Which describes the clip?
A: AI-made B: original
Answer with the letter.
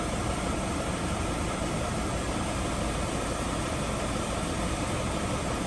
B